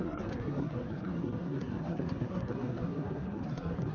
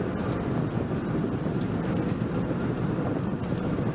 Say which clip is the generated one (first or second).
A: first